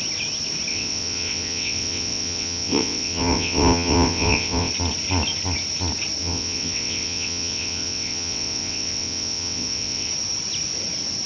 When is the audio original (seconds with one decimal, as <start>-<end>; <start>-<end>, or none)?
0.0-0.7; 4.7-6.2; 10.1-11.3